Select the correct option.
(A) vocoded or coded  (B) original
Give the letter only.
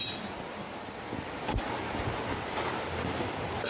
B